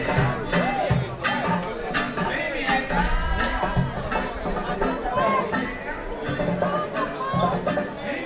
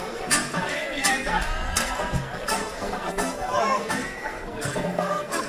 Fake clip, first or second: second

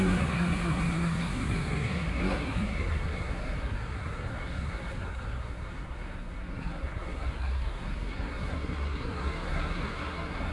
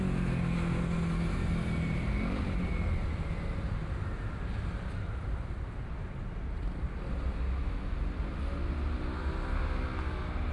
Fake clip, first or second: first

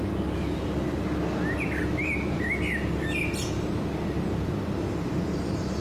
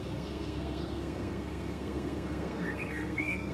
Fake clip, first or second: second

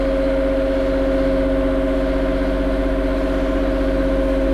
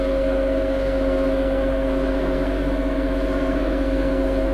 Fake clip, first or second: second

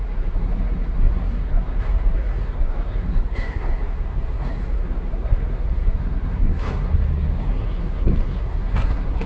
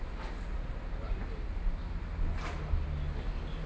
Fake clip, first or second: first